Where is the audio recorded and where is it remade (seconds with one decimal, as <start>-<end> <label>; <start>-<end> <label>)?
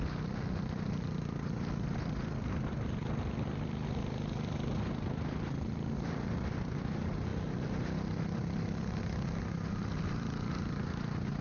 0.0-11.4 recorded